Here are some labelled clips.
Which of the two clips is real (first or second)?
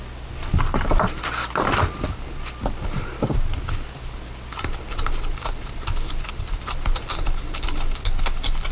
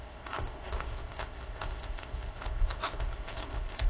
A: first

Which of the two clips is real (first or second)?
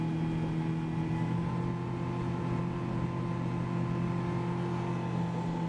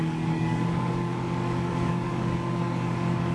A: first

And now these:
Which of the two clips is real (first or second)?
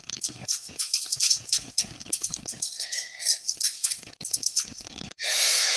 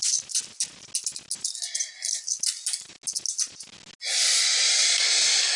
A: second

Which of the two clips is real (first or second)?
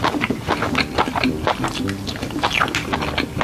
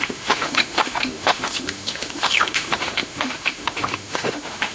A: first